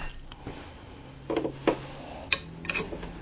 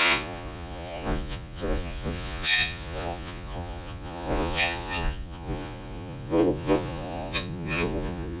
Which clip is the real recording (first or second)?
first